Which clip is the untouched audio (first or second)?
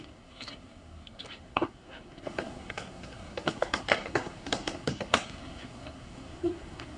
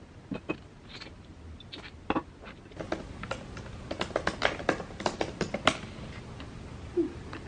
second